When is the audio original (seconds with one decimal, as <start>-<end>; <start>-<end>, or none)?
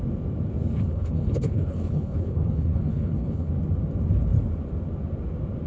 0.0-0.9; 3.5-5.7